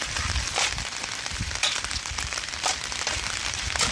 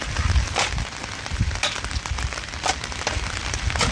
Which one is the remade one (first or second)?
first